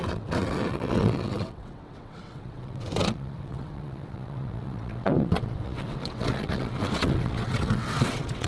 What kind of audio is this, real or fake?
fake